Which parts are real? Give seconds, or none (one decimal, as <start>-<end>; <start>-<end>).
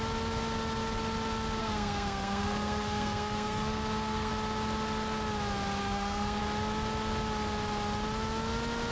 0.0-1.6; 4.3-5.8; 6.4-8.9